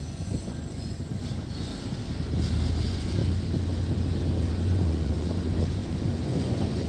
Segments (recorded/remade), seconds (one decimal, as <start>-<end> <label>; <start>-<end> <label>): 0.0-1.7 remade; 1.7-2.8 recorded; 2.8-3.2 remade; 3.2-4.4 recorded; 4.4-6.9 remade